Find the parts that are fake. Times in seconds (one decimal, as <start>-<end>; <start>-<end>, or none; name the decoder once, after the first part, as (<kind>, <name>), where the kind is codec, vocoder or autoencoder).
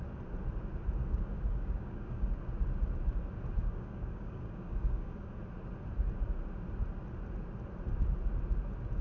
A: 1.0-2.4 (codec, DAC); 3.6-5.4